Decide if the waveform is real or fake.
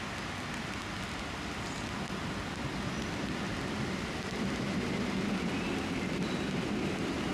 real